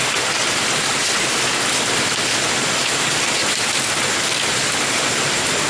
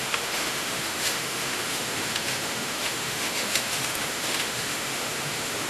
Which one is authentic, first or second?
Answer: first